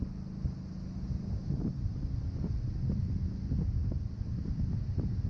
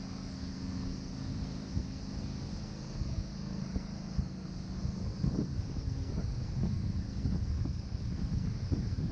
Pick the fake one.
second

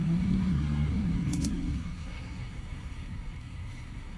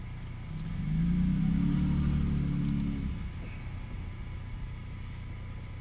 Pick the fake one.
first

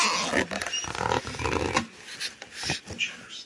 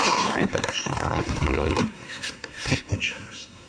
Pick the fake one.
second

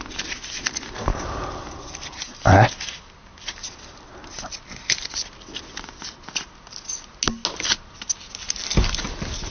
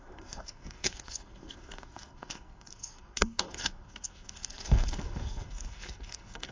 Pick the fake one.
second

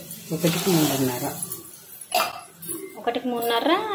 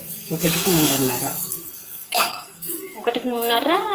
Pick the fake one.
second